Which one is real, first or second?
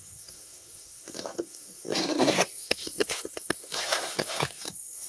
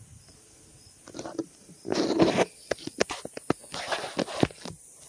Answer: second